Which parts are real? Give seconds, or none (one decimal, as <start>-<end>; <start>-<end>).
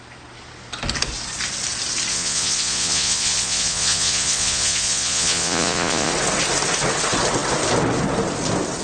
0.0-2.1; 6.1-8.8